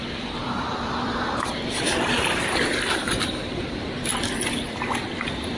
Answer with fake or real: fake